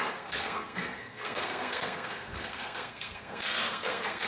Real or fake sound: fake